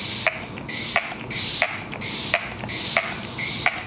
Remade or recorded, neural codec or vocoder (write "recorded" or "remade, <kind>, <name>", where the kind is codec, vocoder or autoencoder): recorded